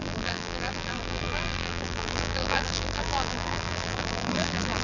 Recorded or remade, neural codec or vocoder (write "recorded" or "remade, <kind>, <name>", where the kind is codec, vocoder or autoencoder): remade, vocoder, BigVGAN v2